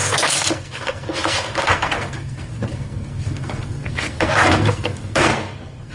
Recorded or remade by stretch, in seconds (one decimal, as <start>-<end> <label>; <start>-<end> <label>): 0.0-5.9 remade